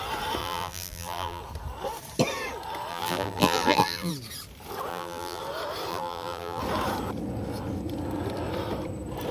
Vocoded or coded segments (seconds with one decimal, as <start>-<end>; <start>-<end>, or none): 0.4-1.4; 2.9-4.1; 4.9-5.4; 5.9-6.6